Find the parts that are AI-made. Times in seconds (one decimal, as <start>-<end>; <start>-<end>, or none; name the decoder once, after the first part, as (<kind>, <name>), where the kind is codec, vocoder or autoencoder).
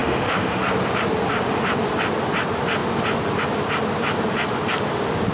0.0-0.6 (autoencoder, DAC-VAE)